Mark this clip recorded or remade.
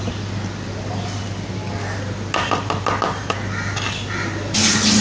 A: recorded